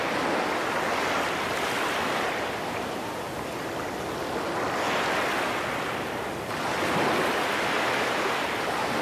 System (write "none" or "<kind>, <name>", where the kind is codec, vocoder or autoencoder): none